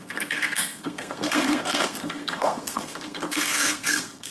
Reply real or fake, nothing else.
fake